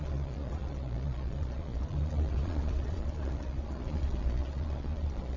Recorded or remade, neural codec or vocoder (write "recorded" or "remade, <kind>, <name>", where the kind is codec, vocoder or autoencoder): remade, vocoder, Vocos